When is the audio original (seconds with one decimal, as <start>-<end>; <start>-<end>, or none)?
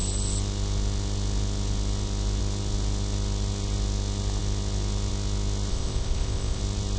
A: 0.0-5.7; 6.6-7.0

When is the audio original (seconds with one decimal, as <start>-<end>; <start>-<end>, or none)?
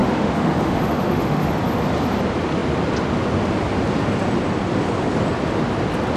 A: 1.5-6.2